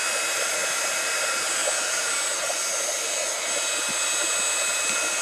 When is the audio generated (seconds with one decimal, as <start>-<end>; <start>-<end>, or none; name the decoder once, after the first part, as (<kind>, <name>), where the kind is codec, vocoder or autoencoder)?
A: none